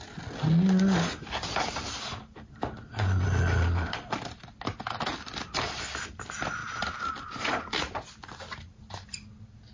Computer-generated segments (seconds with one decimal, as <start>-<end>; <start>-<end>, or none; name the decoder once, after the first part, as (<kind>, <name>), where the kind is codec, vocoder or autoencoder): none